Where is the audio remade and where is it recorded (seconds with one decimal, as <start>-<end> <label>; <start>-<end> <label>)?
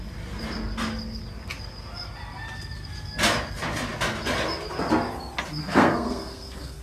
0.0-5.6 recorded; 5.6-6.8 remade